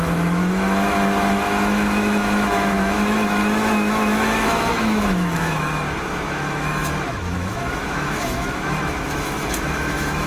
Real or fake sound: fake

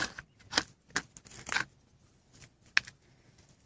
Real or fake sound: real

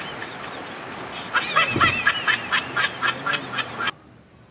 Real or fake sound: real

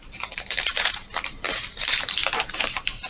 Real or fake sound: fake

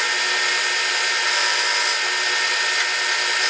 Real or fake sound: real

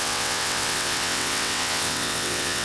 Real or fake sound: fake